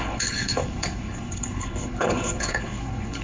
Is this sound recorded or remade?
remade